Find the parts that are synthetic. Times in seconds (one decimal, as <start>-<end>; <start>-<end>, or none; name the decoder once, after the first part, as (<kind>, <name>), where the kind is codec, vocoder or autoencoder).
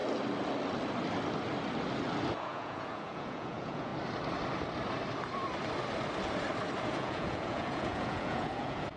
2.4-3.9 (vocoder, Vocos); 6.8-9.0